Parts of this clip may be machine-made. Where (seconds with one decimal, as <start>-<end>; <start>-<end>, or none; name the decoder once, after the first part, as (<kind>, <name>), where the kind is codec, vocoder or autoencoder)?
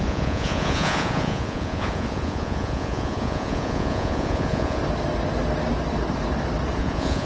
0.0-4.8 (vocoder, Vocos); 6.8-7.2